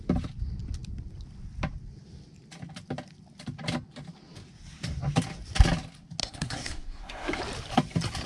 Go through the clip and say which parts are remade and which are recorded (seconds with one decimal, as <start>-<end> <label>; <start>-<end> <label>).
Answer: 0.0-6.2 recorded; 6.2-7.4 remade; 7.4-8.3 recorded